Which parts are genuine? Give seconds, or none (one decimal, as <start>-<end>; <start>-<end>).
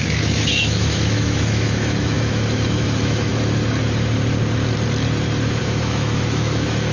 3.3-5.6